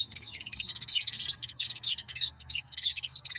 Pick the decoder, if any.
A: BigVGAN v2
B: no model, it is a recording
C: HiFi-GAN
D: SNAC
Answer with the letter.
D